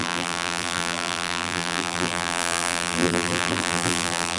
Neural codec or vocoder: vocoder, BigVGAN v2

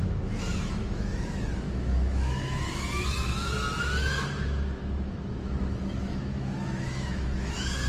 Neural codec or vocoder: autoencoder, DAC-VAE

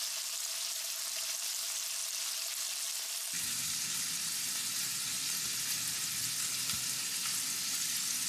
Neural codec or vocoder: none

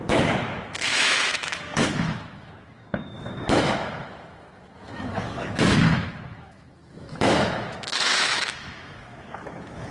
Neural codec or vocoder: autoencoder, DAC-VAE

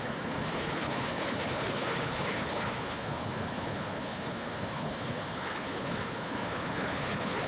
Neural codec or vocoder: codec, HILCodec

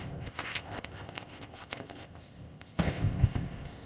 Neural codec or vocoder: codec, ZipCodec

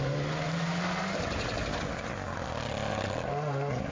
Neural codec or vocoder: none